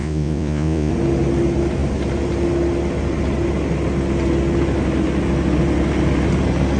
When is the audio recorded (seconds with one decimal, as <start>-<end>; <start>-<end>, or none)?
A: 0.9-6.8